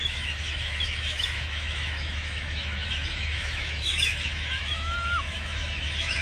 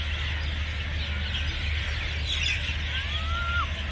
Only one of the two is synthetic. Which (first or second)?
first